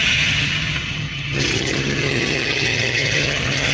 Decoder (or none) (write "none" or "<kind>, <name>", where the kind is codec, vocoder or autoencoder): vocoder, HiFi-GAN